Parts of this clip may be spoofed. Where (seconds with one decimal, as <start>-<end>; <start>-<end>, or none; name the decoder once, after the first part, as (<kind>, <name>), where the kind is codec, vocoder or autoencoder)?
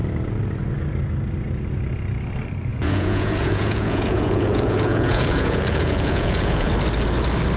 2.7-6.7 (vocoder, Vocos)